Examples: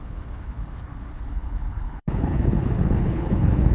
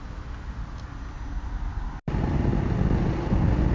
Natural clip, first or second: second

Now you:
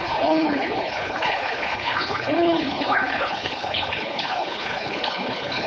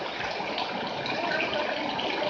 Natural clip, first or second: second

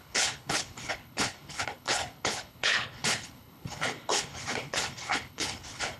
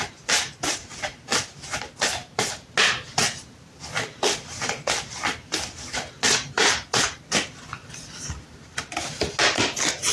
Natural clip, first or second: second